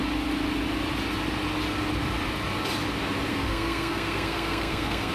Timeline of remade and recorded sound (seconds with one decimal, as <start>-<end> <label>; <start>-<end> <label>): 0.0-3.3 recorded; 3.3-5.1 remade